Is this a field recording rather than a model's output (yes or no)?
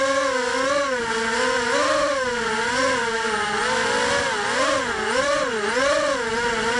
yes